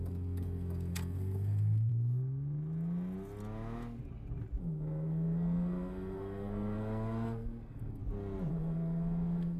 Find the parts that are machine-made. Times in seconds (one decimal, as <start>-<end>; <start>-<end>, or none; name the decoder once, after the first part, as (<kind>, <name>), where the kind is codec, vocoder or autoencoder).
0.0-1.9 (codec, SNAC); 4.6-8.0; 8.5-9.6